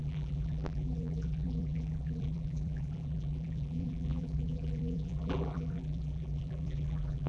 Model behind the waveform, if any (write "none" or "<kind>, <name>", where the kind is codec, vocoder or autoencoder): vocoder, BigVGAN v2